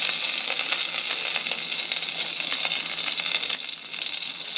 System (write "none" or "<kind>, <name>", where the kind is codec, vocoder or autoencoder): none